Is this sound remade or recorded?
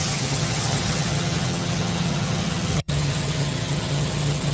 remade